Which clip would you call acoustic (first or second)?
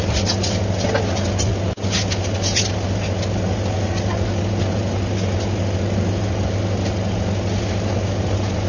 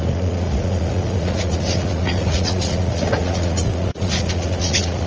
first